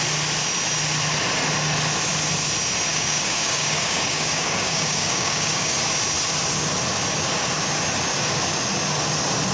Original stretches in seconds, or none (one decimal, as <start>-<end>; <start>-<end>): 0.0-2.9; 5.8-9.5